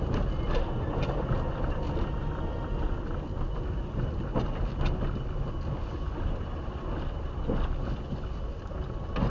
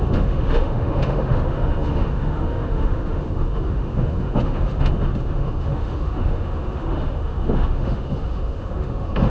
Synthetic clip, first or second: second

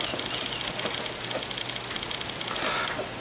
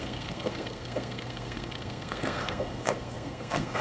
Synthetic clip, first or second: second